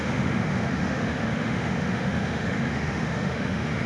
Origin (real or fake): fake